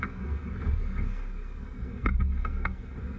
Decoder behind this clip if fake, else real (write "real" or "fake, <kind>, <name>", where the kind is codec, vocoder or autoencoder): fake, codec, SNAC